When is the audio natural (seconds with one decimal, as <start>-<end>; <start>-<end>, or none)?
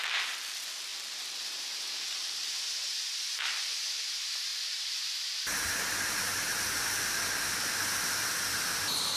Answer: 0.0-9.2